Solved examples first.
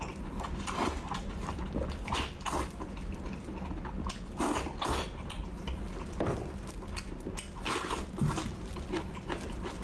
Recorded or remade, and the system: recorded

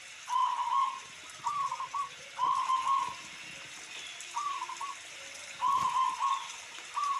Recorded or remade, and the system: recorded